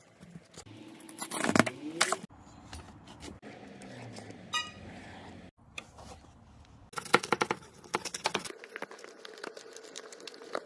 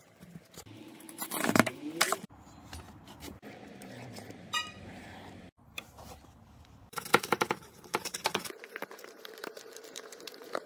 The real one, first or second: first